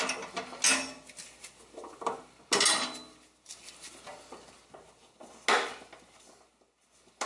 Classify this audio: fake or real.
real